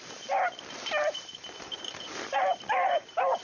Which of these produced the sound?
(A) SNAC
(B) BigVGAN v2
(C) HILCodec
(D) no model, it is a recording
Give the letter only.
B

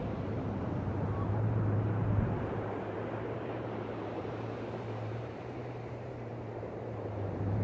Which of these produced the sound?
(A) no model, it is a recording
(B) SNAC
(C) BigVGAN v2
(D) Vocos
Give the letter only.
C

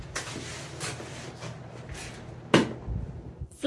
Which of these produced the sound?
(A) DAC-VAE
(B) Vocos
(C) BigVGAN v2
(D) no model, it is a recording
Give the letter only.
D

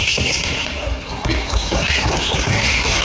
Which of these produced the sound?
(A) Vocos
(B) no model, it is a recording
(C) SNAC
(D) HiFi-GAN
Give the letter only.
C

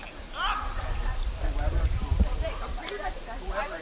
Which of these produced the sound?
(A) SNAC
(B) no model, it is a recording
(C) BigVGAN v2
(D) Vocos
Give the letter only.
C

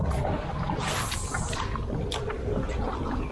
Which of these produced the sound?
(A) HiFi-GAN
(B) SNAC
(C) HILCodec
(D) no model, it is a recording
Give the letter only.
D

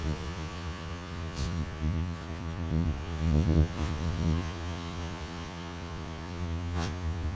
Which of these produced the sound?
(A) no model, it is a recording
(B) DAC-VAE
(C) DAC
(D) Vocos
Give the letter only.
D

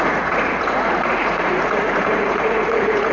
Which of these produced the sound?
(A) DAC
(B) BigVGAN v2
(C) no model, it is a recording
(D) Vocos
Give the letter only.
D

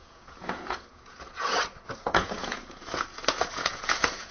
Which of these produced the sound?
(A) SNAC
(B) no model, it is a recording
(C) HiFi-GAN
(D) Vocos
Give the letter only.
D